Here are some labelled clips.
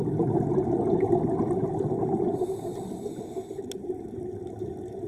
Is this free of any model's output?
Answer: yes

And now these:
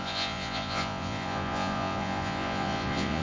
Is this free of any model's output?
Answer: no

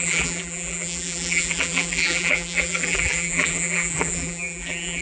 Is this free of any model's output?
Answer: no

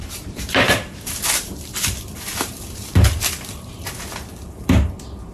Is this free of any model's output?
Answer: no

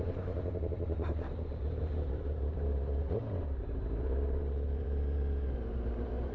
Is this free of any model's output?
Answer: no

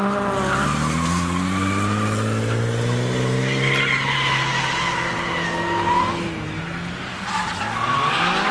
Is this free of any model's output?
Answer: yes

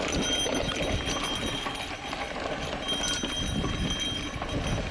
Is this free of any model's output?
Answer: yes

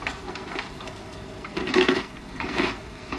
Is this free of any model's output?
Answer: no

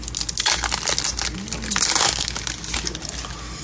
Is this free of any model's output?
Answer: yes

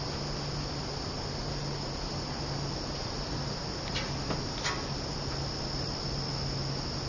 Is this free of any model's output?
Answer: yes